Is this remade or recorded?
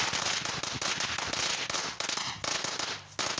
recorded